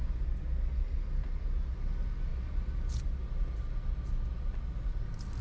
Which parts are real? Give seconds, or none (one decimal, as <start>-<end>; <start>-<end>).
0.0-5.4